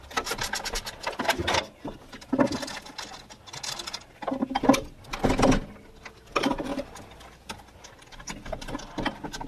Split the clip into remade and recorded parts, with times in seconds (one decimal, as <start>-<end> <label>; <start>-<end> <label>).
0.0-9.5 recorded